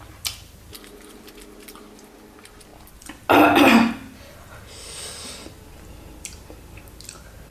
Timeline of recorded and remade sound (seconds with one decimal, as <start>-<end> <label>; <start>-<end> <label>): 0.0-7.5 recorded